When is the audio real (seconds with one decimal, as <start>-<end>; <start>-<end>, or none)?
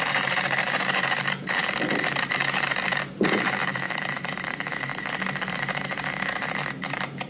1.6-2.2; 4.9-5.5